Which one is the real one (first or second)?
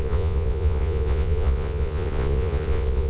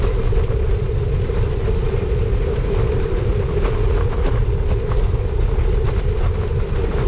second